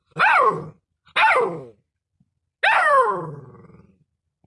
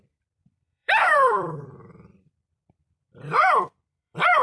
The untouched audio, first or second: first